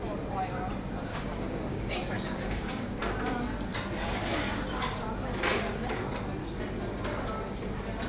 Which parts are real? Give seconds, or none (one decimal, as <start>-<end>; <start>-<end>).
0.0-1.1; 3.0-8.1